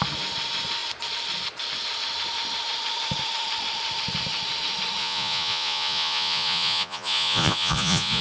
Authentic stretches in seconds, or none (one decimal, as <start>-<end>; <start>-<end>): 0.0-5.0